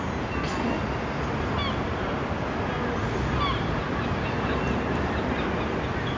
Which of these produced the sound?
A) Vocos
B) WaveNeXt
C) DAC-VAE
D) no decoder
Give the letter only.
D